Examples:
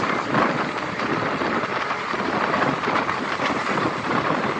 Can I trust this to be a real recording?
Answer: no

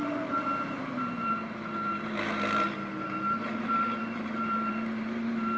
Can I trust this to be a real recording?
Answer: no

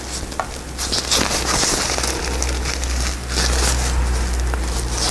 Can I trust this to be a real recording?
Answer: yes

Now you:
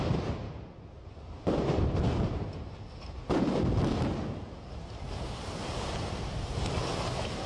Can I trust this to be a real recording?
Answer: yes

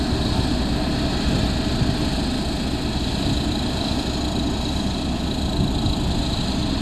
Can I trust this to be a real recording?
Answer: yes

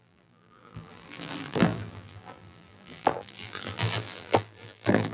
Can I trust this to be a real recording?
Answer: no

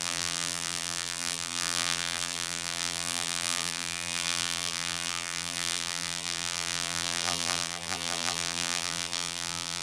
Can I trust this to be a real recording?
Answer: no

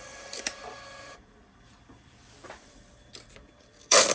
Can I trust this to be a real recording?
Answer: no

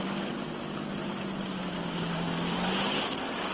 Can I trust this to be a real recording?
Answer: yes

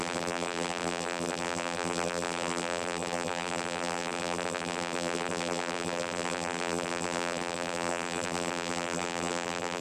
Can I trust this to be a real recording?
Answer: no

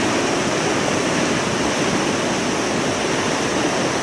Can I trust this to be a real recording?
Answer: yes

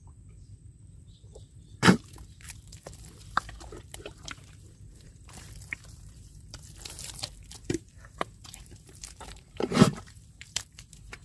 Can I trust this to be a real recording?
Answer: no